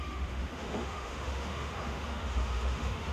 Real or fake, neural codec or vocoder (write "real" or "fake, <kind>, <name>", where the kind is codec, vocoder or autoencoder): fake, autoencoder, DAC-VAE